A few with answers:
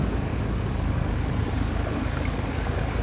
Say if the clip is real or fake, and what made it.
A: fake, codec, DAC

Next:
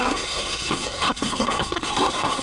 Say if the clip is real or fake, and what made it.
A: fake, codec, SNAC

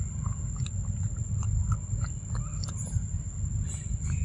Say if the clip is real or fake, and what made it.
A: real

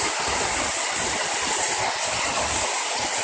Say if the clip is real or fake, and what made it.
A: real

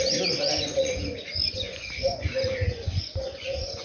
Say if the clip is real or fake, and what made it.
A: fake, vocoder, Vocos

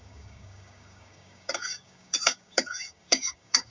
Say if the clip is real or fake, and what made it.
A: fake, codec, DAC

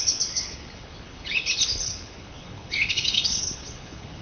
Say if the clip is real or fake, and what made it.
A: fake, codec, HILCodec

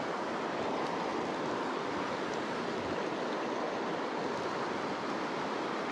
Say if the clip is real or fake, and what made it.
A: real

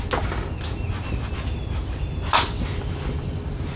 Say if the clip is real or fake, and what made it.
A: real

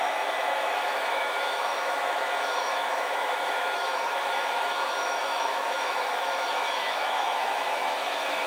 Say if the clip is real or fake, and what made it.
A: fake, autoencoder, DAC-VAE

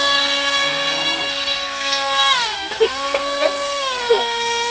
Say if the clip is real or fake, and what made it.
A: fake, codec, SNAC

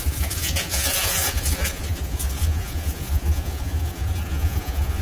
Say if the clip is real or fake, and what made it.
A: fake, vocoder, Vocos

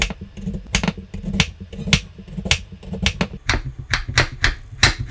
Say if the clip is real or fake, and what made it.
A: real